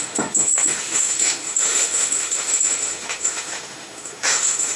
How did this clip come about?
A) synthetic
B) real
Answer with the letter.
A